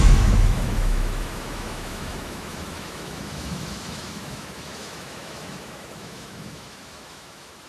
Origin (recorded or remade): remade